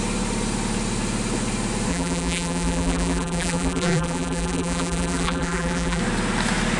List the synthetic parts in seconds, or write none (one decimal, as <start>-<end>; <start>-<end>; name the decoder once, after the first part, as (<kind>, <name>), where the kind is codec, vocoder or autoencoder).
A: 1.9-6.0 (vocoder, BigVGAN v2)